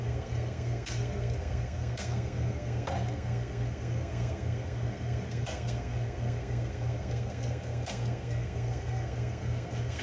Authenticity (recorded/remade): remade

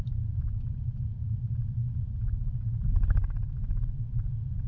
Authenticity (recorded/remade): recorded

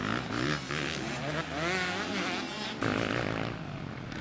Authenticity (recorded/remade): recorded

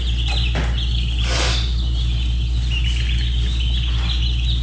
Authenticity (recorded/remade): recorded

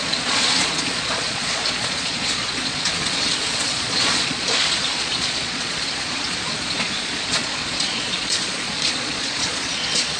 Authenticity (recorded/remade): remade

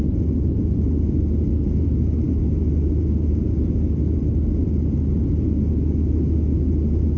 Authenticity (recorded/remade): recorded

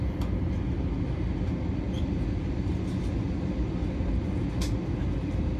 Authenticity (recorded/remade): recorded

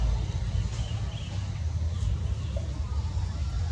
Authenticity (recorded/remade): recorded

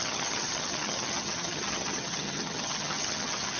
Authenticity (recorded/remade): remade